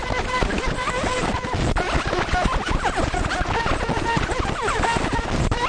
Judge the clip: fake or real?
real